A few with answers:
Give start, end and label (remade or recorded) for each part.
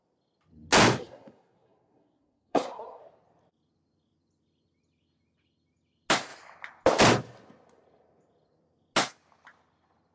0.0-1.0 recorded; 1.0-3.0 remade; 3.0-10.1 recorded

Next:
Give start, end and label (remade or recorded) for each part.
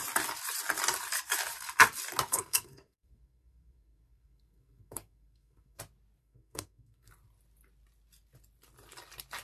0.0-2.3 recorded; 2.3-5.8 remade; 5.8-6.2 recorded; 6.2-7.1 remade; 7.1-9.4 recorded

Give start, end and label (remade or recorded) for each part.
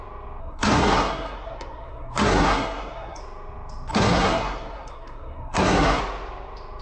0.0-0.4 recorded; 0.4-3.2 remade; 3.2-3.9 recorded; 3.9-6.0 remade; 6.0-6.8 recorded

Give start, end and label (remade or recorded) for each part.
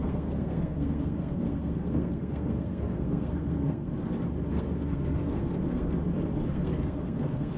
0.0-3.9 remade; 3.9-4.5 recorded; 4.5-6.0 remade; 6.0-6.5 recorded; 6.5-7.6 remade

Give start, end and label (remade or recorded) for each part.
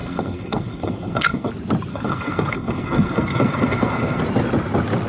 0.0-1.5 remade; 1.5-1.9 recorded; 1.9-4.2 remade; 4.2-5.1 recorded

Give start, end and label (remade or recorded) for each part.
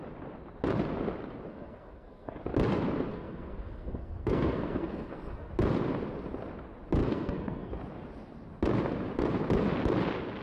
0.0-1.5 recorded; 1.5-2.4 remade; 2.4-3.1 recorded; 3.1-5.5 remade; 5.5-7.0 recorded; 7.0-7.7 remade; 7.7-10.4 recorded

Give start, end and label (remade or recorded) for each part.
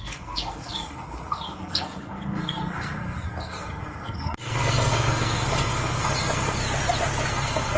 0.0-6.6 remade; 6.6-7.3 recorded; 7.3-7.8 remade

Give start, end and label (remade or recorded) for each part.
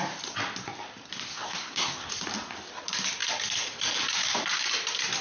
0.0-1.3 recorded; 1.3-2.1 remade; 2.1-5.2 recorded